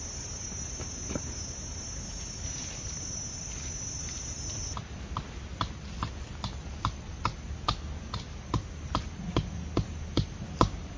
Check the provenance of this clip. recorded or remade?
recorded